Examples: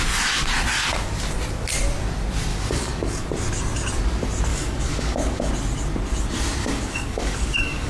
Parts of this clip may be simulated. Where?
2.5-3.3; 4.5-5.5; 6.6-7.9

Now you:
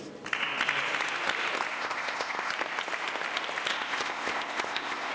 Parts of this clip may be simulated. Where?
1.7-2.5; 3.7-5.1

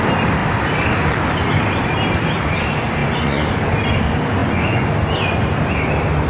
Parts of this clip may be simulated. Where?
3.0-3.5; 4.4-4.9

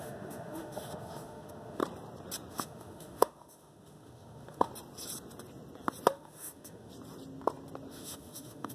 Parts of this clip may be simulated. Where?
0.0-1.8; 2.5-4.7; 6.1-6.9; 7.9-8.7

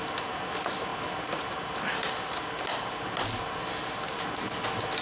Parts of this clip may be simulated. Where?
none

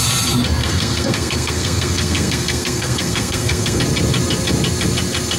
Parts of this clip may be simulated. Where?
0.6-3.8